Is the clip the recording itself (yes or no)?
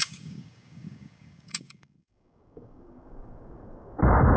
no